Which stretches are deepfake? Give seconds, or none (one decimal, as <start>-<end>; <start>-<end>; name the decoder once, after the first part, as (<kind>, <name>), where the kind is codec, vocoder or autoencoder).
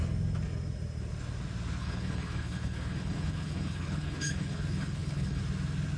1.8-5.4 (codec, HILCodec)